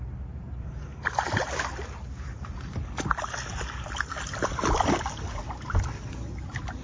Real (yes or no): yes